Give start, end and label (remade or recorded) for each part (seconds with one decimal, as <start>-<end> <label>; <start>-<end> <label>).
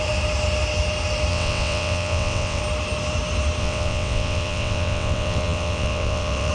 0.0-1.3 recorded; 1.3-2.6 remade; 2.6-3.6 recorded; 3.6-6.5 remade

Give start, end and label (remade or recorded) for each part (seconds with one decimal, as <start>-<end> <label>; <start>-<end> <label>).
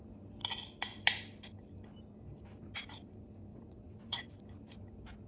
0.0-3.5 recorded; 3.5-4.3 remade; 4.3-5.3 recorded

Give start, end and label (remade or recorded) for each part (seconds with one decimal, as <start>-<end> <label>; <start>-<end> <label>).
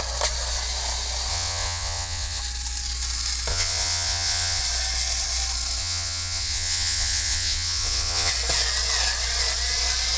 0.0-1.3 recorded; 1.3-2.4 remade; 2.4-3.5 recorded; 3.5-4.6 remade; 4.6-5.8 recorded; 5.8-8.3 remade; 8.3-10.2 recorded